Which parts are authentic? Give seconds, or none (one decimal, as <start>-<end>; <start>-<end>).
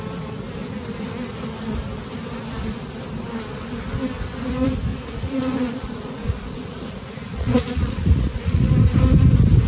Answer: 0.0-4.9; 8.7-9.7